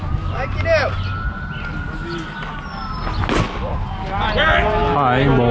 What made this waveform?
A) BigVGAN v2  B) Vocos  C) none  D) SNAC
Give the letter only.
C